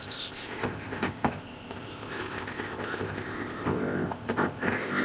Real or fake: fake